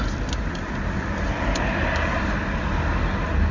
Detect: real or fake real